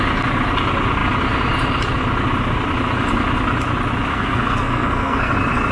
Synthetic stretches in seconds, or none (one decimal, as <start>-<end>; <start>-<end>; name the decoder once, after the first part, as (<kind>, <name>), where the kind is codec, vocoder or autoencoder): 4.1-5.3 (codec, SNAC)